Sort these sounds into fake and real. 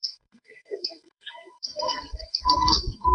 fake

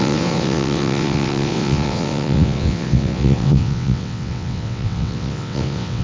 fake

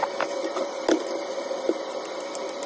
real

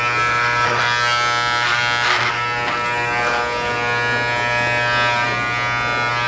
real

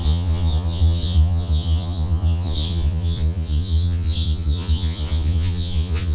fake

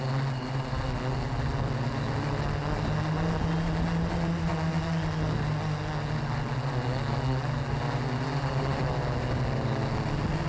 real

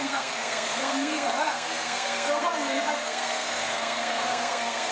fake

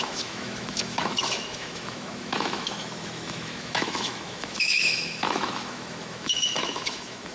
fake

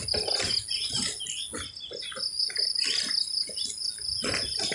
real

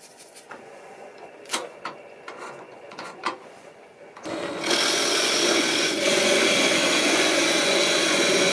fake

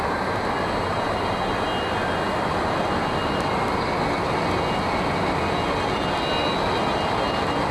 real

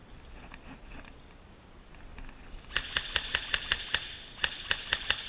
real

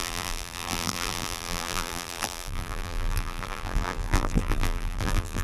fake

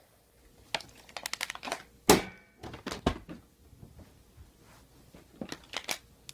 real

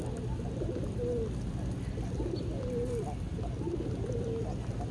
real